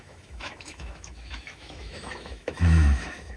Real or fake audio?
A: fake